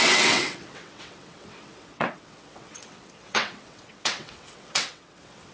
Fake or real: fake